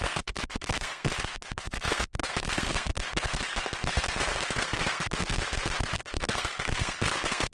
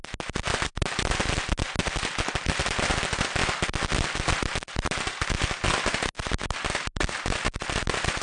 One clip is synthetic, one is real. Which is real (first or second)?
second